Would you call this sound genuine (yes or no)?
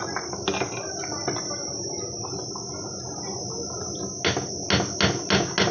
yes